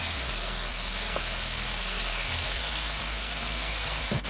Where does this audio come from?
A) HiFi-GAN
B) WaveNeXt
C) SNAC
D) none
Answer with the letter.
C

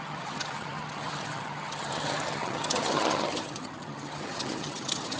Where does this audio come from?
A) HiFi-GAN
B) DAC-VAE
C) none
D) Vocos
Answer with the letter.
A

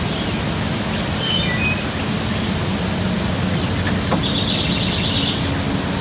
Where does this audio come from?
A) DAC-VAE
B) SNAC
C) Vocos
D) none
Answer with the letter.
D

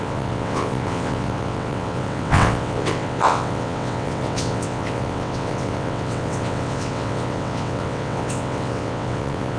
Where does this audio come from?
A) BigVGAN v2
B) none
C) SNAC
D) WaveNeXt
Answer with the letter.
D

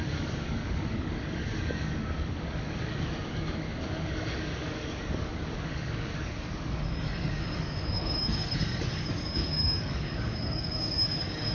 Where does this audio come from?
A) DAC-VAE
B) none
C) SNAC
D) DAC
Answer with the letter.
D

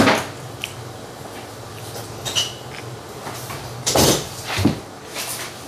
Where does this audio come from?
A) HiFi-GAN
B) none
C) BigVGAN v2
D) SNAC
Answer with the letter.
B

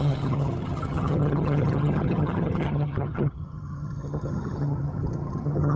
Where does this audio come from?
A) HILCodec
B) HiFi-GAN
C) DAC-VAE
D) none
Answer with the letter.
B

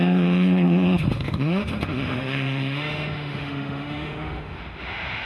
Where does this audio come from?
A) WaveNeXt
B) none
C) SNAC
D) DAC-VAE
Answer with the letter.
D